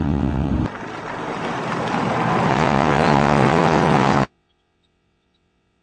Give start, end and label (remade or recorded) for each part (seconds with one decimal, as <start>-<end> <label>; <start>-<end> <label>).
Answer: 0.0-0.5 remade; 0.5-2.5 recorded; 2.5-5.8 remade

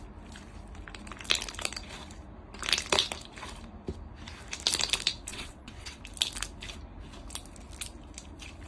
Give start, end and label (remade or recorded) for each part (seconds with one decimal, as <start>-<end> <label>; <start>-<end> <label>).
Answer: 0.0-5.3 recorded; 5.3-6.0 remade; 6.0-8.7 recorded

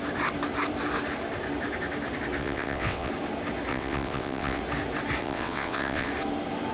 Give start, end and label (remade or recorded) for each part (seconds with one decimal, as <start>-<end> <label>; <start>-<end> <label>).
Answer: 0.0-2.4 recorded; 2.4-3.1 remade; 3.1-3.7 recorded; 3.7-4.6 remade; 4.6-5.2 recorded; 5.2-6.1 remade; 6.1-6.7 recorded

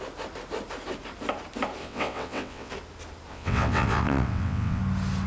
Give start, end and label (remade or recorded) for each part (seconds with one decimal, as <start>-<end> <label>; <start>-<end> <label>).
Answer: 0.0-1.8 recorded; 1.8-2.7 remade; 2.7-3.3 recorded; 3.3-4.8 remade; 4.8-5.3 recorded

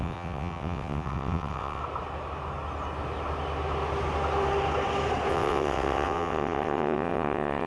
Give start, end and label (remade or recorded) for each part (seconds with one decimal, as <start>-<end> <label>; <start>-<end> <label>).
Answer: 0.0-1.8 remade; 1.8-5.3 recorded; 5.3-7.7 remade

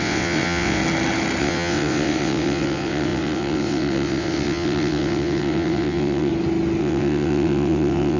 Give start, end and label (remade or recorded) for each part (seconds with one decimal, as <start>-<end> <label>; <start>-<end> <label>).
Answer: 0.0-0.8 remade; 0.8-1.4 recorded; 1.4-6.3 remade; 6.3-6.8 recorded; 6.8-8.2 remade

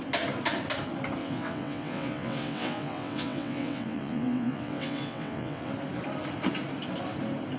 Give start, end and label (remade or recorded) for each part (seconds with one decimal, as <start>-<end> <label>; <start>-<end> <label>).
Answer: 0.0-1.2 recorded; 1.2-5.7 remade; 5.7-7.6 recorded

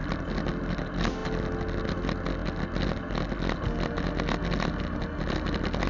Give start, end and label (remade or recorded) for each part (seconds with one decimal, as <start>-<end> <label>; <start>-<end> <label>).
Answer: 0.0-5.9 recorded